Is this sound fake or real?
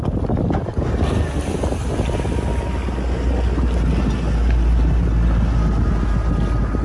real